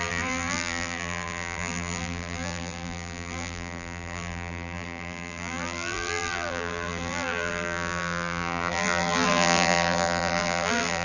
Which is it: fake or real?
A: fake